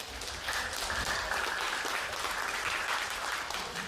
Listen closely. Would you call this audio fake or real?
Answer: fake